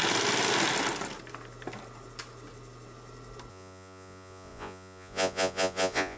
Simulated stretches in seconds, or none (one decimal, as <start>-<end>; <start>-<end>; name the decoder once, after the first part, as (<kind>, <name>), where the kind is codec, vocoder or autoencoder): 3.5-6.2 (vocoder, Vocos)

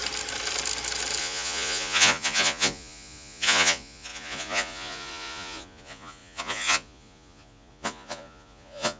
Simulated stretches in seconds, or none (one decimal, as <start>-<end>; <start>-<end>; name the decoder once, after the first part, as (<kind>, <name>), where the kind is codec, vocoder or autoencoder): 1.2-9.0 (vocoder, Vocos)

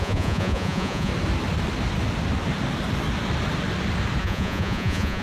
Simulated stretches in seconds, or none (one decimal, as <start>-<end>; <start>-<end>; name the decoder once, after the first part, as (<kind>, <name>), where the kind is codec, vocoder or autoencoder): 0.0-1.1 (vocoder, Vocos); 4.2-5.2

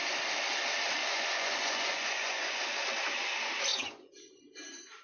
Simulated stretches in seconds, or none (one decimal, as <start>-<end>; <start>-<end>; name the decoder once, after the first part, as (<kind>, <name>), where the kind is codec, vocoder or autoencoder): 1.0-2.6 (vocoder, Vocos); 3.7-4.4

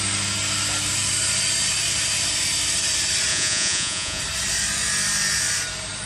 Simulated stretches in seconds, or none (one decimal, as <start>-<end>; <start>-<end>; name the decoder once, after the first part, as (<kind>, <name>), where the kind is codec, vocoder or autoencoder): 3.3-4.2 (vocoder, Vocos)